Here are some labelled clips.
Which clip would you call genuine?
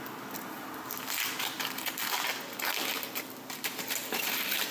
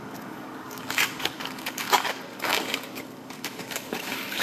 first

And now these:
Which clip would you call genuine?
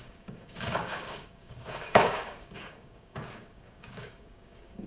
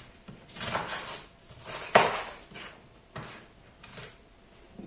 second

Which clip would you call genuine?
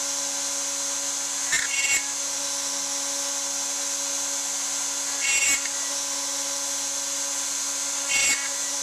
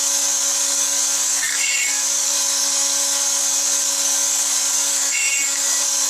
first